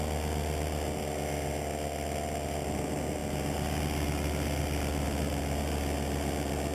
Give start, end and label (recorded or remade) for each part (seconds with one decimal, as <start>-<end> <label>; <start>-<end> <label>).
0.0-6.7 recorded